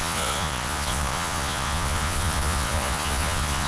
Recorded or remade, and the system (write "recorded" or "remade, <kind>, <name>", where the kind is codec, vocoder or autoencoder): remade, vocoder, Vocos